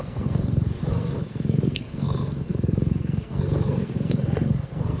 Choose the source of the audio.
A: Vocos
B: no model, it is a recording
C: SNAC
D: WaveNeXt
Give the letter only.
C